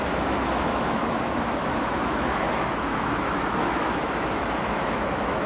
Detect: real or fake fake